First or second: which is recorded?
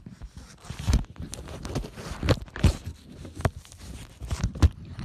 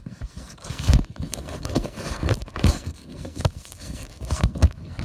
first